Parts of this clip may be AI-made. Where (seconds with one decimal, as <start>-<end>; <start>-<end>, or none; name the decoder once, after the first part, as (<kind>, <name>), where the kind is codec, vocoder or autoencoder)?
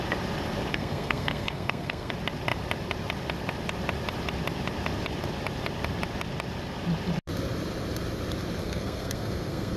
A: 0.7-2.1 (codec, SNAC); 8.6-9.8